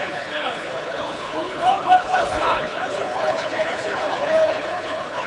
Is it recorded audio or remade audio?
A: remade